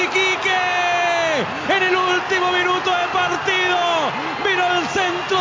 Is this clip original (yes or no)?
yes